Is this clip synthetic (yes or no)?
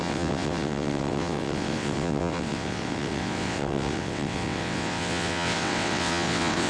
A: yes